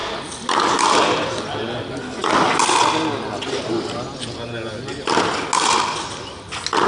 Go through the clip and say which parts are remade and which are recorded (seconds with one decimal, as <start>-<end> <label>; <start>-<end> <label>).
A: 0.0-6.9 recorded